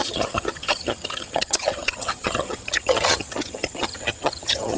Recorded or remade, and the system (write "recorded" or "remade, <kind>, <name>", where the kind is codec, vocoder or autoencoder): remade, vocoder, HiFi-GAN